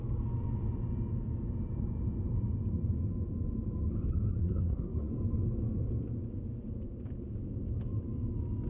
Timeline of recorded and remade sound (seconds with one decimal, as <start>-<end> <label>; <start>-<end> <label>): 0.0-4.4 recorded; 4.4-5.1 remade; 5.1-8.7 recorded